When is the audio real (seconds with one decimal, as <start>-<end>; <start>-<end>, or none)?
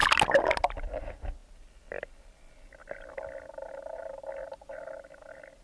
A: 0.0-5.6